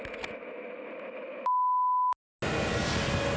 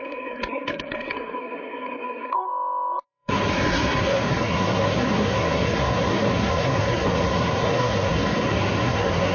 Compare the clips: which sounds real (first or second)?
first